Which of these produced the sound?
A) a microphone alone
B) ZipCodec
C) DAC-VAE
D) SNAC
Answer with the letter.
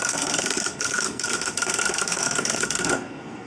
D